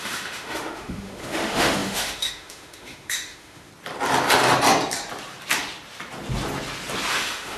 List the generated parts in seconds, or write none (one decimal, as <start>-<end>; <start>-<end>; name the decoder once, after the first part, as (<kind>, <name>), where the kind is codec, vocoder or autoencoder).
0.0-3.7 (autoencoder, DAC-VAE); 7.1-7.6